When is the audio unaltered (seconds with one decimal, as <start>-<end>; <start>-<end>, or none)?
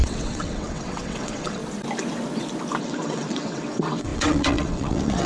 1.6-2.8